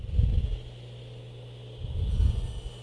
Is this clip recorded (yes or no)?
yes